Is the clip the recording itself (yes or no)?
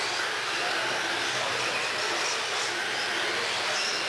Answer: yes